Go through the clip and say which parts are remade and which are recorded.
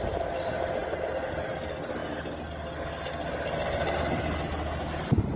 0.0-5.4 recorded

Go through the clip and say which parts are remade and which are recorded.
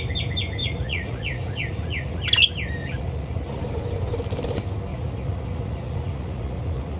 0.0-0.6 recorded; 0.6-2.2 remade; 2.2-2.8 recorded; 2.8-3.6 remade; 3.6-4.9 recorded; 4.9-7.0 remade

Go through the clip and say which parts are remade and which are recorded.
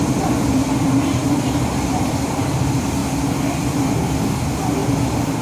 0.0-3.0 remade; 3.0-4.3 recorded; 4.3-5.4 remade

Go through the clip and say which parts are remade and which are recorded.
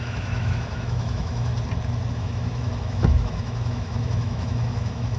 0.0-1.5 remade; 1.5-2.1 recorded; 2.1-5.2 remade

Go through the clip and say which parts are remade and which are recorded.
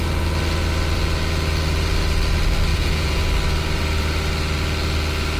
0.0-2.7 recorded; 2.7-3.2 remade; 3.2-5.4 recorded